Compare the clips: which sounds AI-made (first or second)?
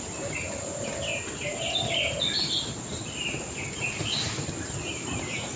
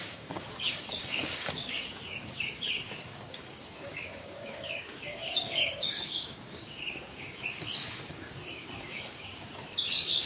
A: second